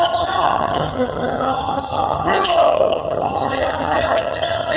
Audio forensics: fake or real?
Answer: fake